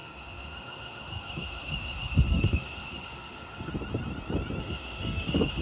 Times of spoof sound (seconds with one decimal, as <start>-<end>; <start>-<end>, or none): 0.0-3.7; 4.6-5.6